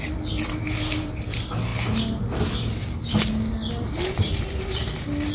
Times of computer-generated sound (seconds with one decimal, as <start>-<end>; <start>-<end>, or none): none